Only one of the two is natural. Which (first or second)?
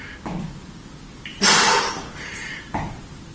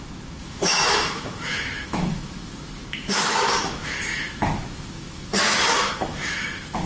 first